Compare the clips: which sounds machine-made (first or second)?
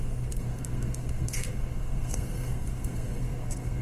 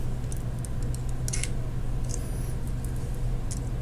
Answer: first